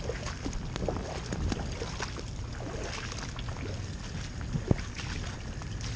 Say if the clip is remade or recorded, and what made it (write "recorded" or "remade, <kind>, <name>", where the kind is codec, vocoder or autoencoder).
recorded